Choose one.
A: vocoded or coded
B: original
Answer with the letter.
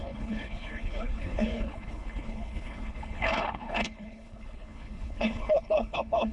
A